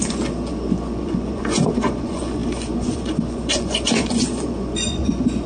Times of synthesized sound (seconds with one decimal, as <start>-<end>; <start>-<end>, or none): 0.0-5.5